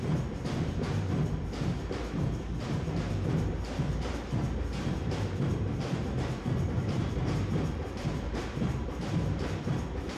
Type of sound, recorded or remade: remade